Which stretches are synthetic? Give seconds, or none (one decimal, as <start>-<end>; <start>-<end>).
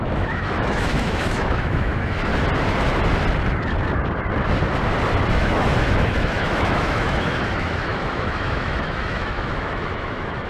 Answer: 0.0-2.3; 5.3-10.5